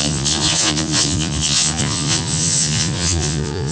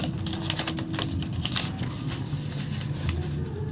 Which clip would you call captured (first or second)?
second